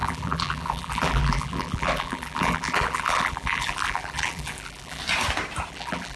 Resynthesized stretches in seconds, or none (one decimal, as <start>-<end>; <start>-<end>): 0.0-5.0; 5.7-6.2